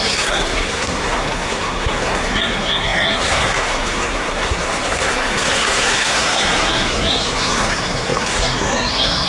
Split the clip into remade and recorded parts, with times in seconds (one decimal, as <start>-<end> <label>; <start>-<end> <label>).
0.0-9.3 remade